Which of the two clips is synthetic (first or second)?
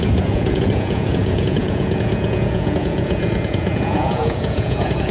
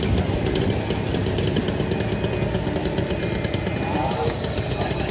first